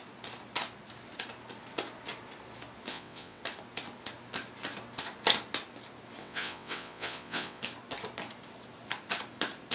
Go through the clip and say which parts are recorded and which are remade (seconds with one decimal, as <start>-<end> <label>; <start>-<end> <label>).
0.0-2.9 recorded; 2.9-3.4 remade; 3.4-6.2 recorded; 6.2-7.6 remade; 7.6-9.7 recorded